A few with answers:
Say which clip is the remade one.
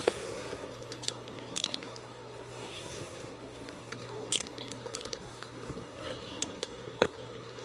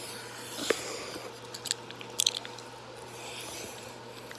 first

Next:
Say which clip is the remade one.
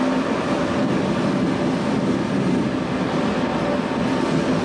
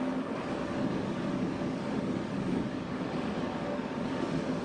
second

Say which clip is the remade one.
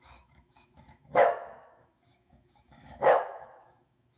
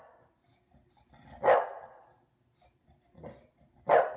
first